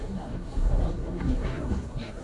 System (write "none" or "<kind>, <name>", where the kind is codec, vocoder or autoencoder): codec, SNAC